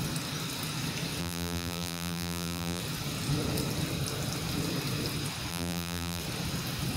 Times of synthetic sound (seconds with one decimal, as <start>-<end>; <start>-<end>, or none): 1.2-2.8; 5.5-6.2